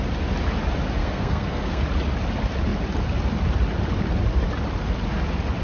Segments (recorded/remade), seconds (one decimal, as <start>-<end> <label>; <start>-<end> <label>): 0.0-1.0 recorded; 1.0-1.8 remade; 1.8-5.6 recorded